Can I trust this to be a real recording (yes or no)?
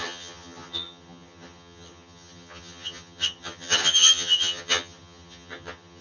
no